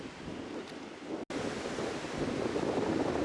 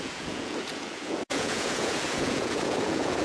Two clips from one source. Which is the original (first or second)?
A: first